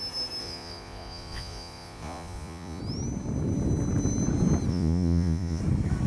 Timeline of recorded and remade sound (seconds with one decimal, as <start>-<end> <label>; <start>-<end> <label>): 0.0-0.4 recorded; 0.4-2.8 remade; 2.8-4.7 recorded; 4.7-5.6 remade; 5.6-6.1 recorded